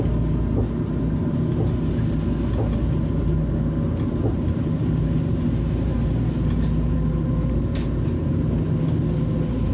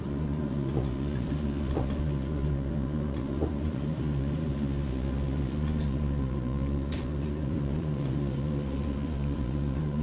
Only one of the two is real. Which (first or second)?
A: first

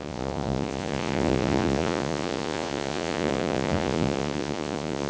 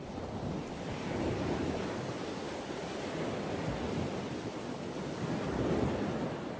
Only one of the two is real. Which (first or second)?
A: second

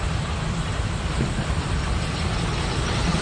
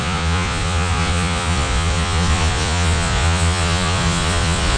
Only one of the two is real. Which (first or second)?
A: first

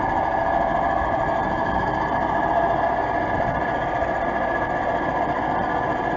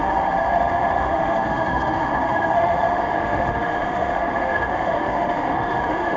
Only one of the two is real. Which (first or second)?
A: first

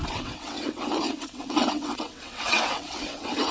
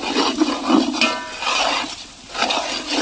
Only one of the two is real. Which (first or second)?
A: second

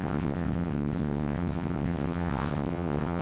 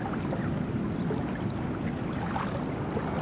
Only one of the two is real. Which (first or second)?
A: second